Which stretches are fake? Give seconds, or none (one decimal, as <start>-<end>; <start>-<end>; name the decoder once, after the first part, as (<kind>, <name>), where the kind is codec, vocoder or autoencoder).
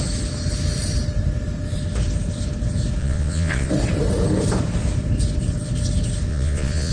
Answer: 3.0-3.7 (vocoder, Vocos); 6.3-6.9